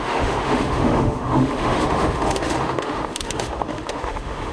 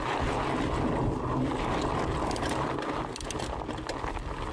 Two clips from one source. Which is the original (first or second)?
second